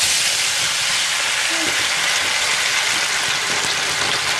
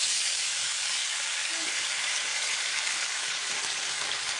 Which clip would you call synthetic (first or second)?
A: second